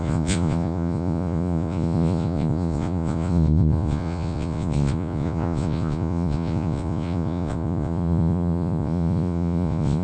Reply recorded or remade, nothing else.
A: remade